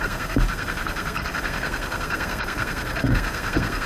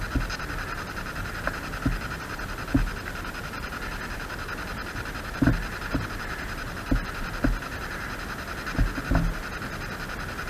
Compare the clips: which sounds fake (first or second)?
first